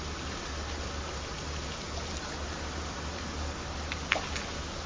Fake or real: real